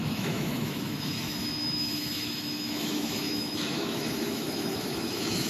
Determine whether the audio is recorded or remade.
remade